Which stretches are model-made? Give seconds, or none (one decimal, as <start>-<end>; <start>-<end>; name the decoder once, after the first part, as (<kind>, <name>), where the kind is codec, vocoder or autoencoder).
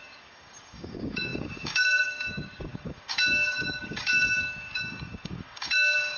0.0-6.2 (codec, DAC)